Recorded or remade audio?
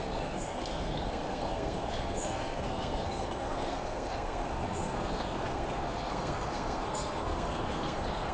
remade